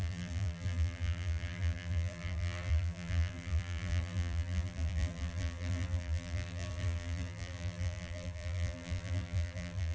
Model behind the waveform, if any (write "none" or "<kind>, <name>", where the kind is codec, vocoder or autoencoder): vocoder, BigVGAN v2